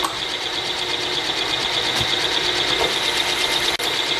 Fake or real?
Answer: real